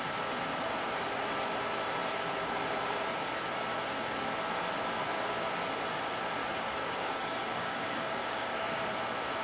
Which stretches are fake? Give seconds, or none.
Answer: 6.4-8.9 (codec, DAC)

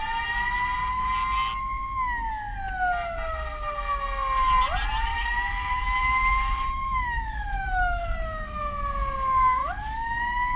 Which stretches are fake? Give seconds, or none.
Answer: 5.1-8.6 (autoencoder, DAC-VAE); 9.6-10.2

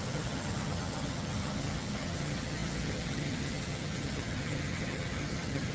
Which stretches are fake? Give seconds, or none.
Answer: 0.0-5.7 (vocoder, HiFi-GAN)

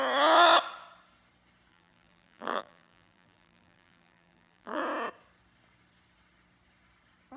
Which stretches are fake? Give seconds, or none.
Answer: 1.7-4.8 (vocoder, BigVGAN v2)

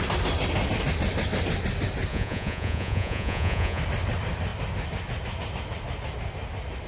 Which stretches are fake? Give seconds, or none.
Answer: 2.1-3.8 (vocoder, Vocos)